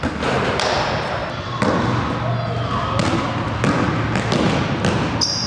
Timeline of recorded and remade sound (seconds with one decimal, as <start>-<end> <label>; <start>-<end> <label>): 0.0-5.5 recorded

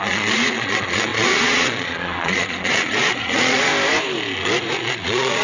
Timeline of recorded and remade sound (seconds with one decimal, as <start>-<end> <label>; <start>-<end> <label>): 0.0-3.7 remade; 3.7-4.7 recorded; 4.7-5.4 remade

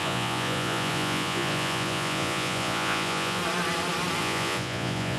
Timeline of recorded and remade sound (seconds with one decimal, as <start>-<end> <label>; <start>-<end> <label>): 0.0-3.4 remade; 3.4-4.2 recorded; 4.2-5.2 remade

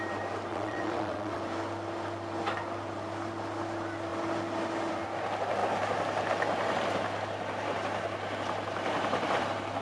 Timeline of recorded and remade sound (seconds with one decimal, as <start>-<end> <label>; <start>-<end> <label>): 0.0-0.5 recorded; 0.5-1.4 remade; 1.4-9.8 recorded

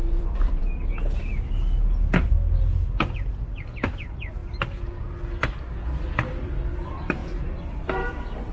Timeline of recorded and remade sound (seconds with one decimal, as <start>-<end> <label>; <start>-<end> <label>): 0.0-0.6 remade; 0.6-3.4 recorded; 3.4-4.4 remade; 4.4-5.6 recorded; 5.6-7.2 remade; 7.2-7.8 recorded; 7.8-8.5 remade

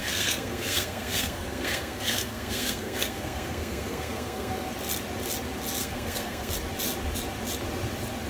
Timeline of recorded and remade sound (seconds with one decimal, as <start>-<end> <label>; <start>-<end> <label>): 0.0-4.7 remade; 4.7-5.8 recorded; 5.8-6.5 remade; 6.5-8.3 recorded

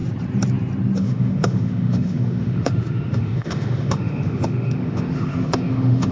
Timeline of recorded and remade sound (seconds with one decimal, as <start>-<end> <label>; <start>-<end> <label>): 0.0-1.0 recorded; 1.0-6.1 remade

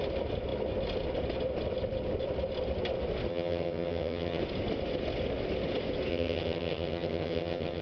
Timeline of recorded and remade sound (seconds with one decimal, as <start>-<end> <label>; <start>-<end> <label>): 0.0-3.3 recorded; 3.3-4.4 remade; 4.4-6.1 recorded; 6.1-7.8 remade